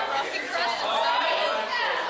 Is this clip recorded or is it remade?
recorded